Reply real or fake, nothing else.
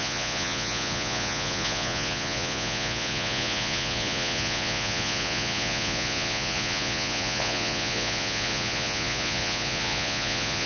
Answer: fake